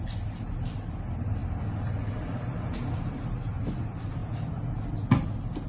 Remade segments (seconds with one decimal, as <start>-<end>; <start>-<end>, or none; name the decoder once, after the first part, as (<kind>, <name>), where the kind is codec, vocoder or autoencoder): none